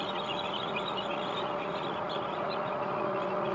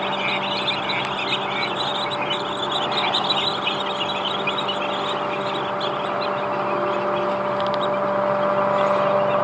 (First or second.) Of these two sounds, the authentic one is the second